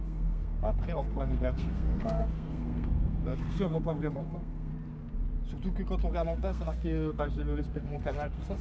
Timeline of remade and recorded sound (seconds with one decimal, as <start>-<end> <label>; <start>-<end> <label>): 0.0-4.7 remade; 4.7-6.1 recorded; 6.1-8.6 remade